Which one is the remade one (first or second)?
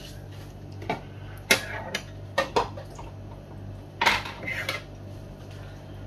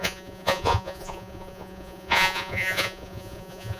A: second